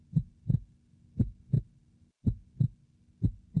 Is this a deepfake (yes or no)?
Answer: no